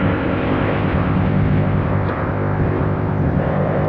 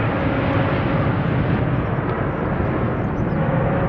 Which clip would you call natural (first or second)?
second